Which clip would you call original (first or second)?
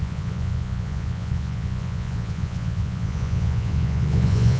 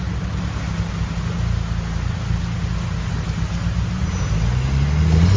second